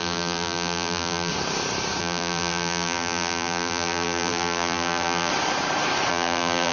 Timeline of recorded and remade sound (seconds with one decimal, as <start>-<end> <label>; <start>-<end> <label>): 0.0-1.3 remade; 1.3-2.0 recorded; 2.0-5.3 remade; 5.3-6.1 recorded; 6.1-6.7 remade